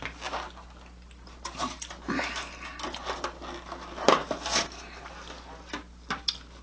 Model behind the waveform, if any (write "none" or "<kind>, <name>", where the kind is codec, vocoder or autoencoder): none